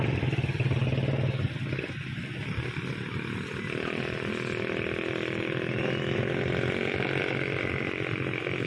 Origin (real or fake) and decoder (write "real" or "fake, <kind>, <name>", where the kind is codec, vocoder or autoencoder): real